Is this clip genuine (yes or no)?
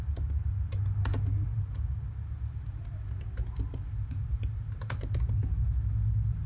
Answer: yes